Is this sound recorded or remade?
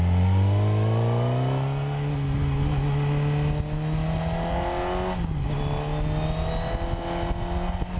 recorded